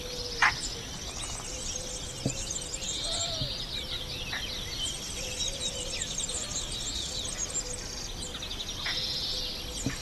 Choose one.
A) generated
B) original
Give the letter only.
B